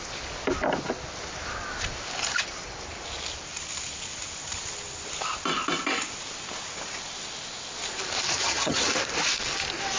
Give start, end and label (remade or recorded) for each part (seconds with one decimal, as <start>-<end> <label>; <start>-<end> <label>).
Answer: 0.0-8.4 recorded; 8.4-8.9 remade; 8.9-10.0 recorded